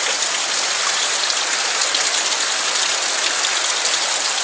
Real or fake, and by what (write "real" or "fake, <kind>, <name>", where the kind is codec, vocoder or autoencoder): real